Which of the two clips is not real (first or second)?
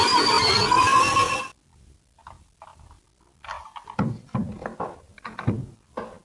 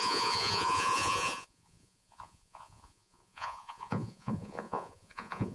second